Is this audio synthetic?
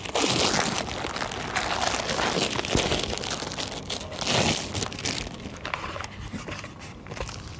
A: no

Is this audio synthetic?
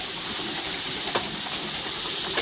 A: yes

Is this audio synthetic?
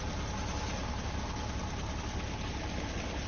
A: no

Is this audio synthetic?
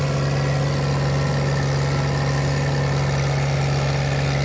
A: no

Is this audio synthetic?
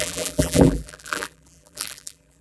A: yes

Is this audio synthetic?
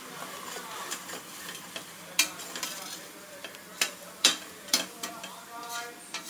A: yes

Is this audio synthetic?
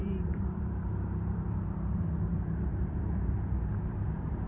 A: yes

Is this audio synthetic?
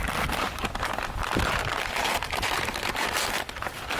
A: yes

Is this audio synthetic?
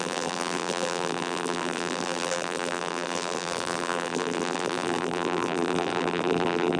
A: yes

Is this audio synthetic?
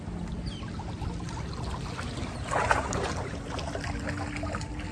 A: no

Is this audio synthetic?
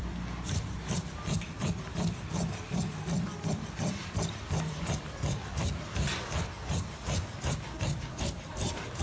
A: yes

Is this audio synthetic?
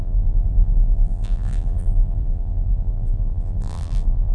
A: yes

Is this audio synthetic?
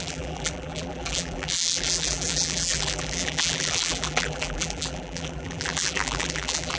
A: yes